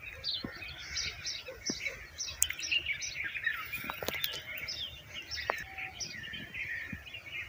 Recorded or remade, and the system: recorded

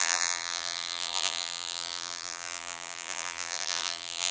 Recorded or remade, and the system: remade, vocoder, BigVGAN v2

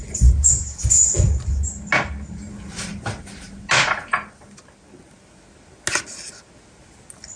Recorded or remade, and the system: recorded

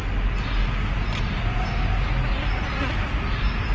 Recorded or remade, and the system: recorded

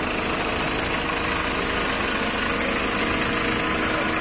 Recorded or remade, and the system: recorded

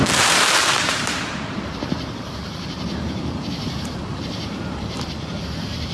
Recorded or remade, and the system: remade, vocoder, BigVGAN v2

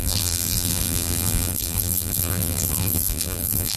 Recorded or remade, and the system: remade, vocoder, BigVGAN v2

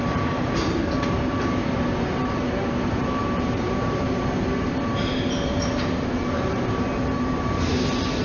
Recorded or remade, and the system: remade, vocoder, BigVGAN v2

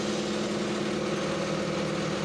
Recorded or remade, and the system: recorded